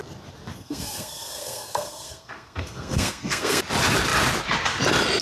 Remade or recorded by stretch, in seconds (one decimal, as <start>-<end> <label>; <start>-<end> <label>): 0.0-0.5 recorded; 0.5-3.6 remade; 3.6-5.2 recorded